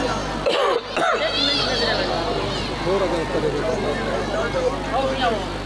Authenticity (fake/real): real